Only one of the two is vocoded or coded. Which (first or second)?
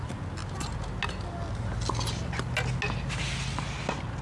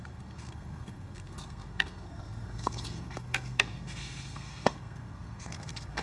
second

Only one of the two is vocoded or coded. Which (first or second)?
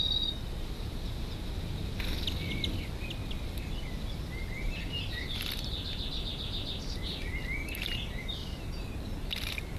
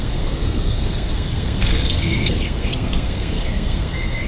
second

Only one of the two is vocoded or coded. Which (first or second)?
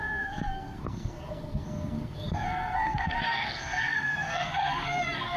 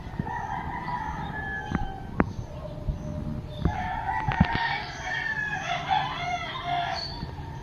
first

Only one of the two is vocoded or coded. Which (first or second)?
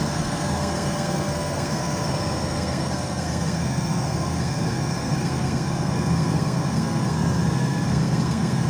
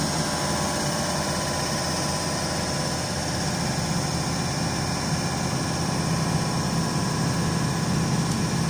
first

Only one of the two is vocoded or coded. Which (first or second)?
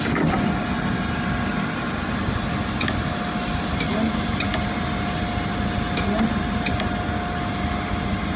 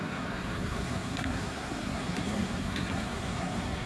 second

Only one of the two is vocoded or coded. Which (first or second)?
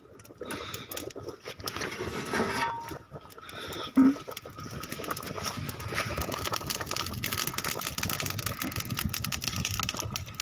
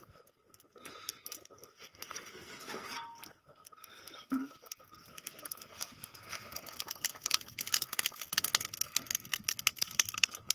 second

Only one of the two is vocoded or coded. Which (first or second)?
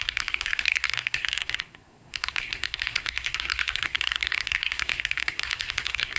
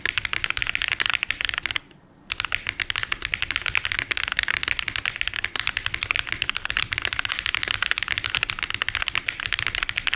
first